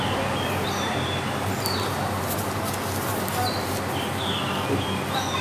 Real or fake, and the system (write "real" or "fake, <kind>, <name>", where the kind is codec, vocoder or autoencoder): real